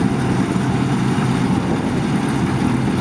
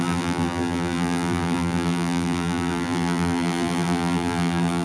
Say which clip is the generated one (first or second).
second